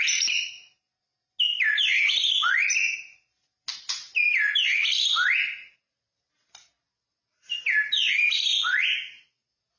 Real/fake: real